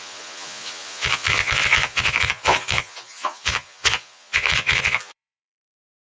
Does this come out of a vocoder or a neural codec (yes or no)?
yes